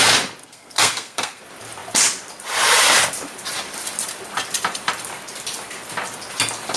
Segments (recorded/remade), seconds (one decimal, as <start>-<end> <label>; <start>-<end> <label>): 0.0-0.4 recorded; 0.4-1.4 remade; 1.4-6.8 recorded